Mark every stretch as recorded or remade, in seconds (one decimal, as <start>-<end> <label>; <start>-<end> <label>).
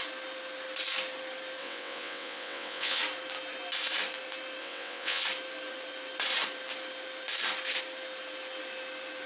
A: 0.0-1.6 recorded; 1.6-3.0 remade; 3.0-4.6 recorded; 4.6-5.2 remade; 5.2-9.3 recorded